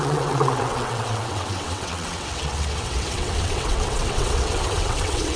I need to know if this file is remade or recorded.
remade